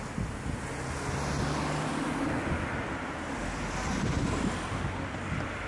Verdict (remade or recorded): recorded